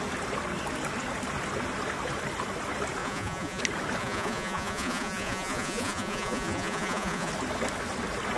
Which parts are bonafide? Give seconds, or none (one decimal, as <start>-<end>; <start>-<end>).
0.0-3.0; 3.6-4.0; 7.3-8.4